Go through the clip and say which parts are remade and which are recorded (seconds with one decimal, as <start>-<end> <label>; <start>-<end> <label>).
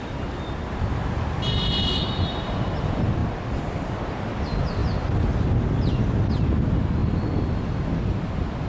0.0-3.2 recorded; 3.2-3.9 remade; 3.9-7.0 recorded; 7.0-7.8 remade; 7.8-8.7 recorded